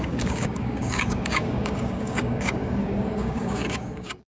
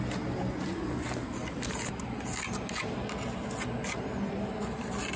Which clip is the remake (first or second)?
first